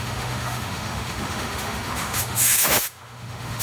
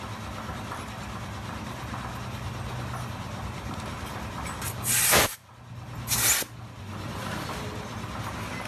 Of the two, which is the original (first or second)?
second